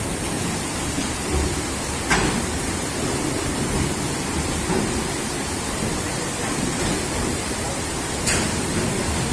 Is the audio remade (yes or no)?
no